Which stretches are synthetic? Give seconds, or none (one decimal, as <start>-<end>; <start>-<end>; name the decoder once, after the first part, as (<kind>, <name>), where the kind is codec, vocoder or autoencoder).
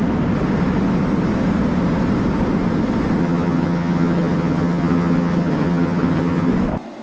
3.2-6.5 (vocoder, HiFi-GAN)